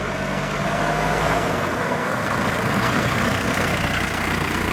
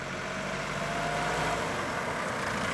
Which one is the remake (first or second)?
first